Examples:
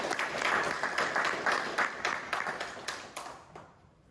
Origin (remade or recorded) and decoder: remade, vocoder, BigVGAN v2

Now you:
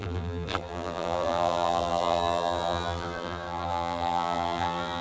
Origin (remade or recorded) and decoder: remade, vocoder, BigVGAN v2